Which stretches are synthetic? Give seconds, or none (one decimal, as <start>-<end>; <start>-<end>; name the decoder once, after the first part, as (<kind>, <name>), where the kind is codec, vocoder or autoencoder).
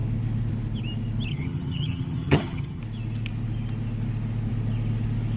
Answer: 1.3-2.8 (vocoder, HiFi-GAN)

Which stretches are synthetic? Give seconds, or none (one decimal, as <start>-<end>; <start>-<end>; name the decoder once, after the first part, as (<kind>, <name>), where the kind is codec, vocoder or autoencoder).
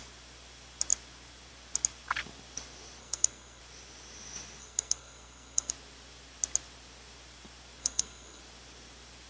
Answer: 3.0-3.6 (codec, SNAC); 4.6-5.7; 7.8-8.4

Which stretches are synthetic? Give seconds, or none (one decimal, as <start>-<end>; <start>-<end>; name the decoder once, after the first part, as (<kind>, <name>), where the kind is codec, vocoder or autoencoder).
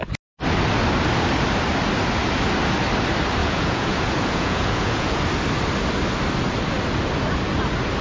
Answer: 3.4-5.2 (vocoder, Vocos)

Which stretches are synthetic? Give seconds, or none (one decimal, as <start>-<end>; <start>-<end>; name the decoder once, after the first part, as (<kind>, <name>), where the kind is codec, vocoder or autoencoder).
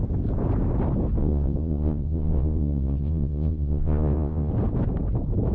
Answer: 1.2-4.5 (vocoder, Vocos)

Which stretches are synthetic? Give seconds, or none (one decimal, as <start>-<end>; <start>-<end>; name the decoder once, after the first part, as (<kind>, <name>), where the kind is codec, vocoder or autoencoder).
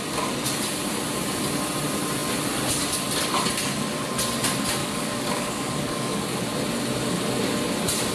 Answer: 4.8-6.4 (codec, DAC)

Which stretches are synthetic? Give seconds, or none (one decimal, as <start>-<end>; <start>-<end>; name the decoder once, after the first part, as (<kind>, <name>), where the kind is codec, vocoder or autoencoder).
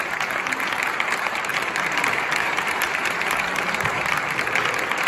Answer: 0.0-5.1 (vocoder, BigVGAN v2)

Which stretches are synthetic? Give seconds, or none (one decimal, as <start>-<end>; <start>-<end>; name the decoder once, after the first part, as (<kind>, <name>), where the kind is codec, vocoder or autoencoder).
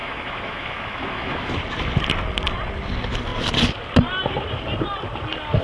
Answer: 0.0-1.5 (autoencoder, DAC-VAE)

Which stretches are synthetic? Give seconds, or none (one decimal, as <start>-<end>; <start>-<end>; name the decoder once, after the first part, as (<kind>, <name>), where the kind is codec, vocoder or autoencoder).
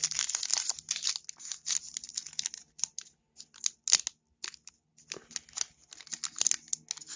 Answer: none